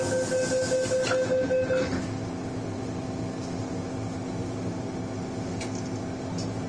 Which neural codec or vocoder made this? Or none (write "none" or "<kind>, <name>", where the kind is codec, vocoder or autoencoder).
none